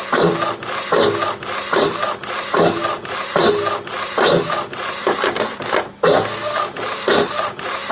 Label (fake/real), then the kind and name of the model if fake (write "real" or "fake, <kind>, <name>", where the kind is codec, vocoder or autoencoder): real